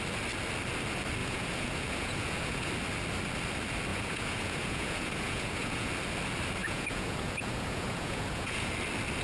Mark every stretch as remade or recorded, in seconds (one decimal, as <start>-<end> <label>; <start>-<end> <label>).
0.0-1.2 recorded; 1.2-2.7 remade; 2.7-3.9 recorded; 3.9-5.9 remade; 5.9-6.6 recorded; 6.6-8.7 remade; 8.7-9.2 recorded

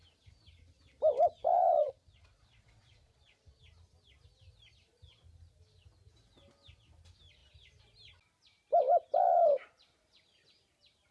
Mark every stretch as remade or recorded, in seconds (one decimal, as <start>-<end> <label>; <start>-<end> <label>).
0.0-1.5 recorded; 1.5-3.6 remade; 3.6-11.1 recorded